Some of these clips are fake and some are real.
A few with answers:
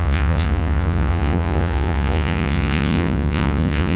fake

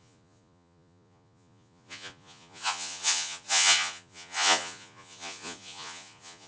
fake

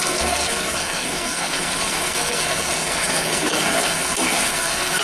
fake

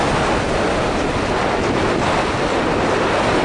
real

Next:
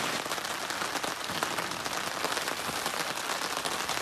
real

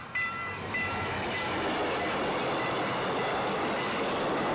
real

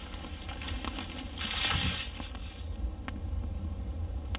real